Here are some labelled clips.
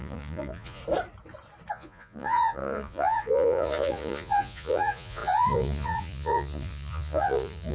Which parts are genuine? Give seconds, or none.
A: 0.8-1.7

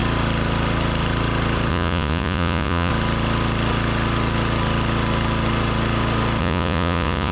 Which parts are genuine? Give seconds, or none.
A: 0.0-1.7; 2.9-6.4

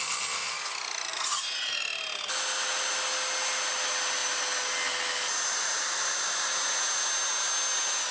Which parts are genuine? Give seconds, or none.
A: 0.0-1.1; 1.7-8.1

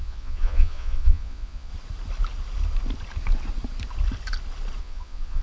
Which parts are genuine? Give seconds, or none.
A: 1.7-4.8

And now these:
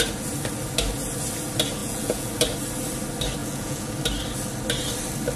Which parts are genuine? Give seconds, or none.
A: 0.0-1.8; 2.3-3.4; 3.9-5.4

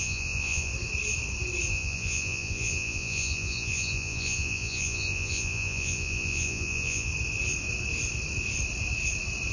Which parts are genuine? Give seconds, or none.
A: 0.7-1.7; 7.1-9.5